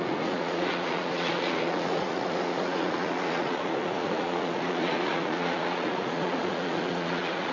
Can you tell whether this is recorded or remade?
remade